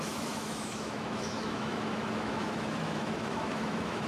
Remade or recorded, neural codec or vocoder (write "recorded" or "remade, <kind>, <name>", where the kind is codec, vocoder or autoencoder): remade, autoencoder, DAC-VAE